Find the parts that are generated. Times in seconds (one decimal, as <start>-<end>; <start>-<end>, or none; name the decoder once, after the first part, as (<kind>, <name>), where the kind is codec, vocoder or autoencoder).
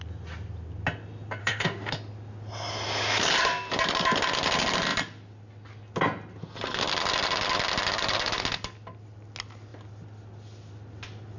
1.4-1.9 (autoencoder, DAC-VAE)